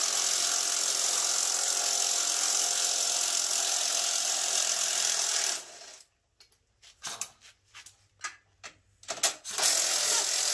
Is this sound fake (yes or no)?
no